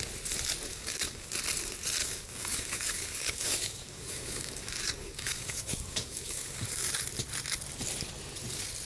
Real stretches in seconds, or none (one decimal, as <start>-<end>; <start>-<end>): 0.0-0.7; 1.3-2.0; 6.9-8.9